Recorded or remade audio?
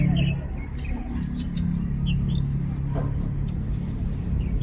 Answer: recorded